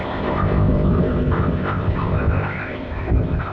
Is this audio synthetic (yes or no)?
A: yes